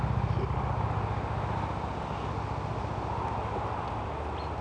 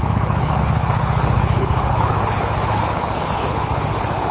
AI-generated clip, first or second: second